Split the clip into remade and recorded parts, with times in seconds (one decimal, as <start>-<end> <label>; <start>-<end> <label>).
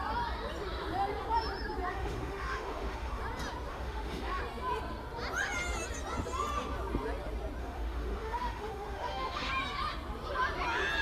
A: 0.0-1.9 recorded; 1.9-3.2 remade; 3.2-3.7 recorded; 3.7-4.4 remade; 4.4-7.6 recorded; 7.6-9.5 remade; 9.5-11.0 recorded